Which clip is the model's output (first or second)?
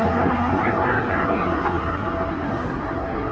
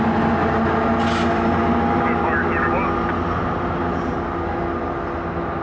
first